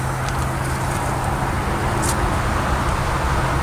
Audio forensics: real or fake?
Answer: real